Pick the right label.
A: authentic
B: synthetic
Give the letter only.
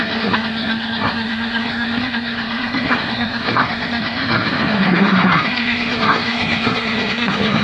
B